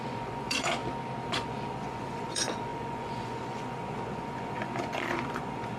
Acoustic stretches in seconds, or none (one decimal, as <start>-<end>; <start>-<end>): 0.8-1.3